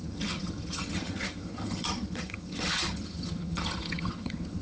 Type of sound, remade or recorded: remade